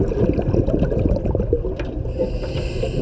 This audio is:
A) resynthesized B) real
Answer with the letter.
B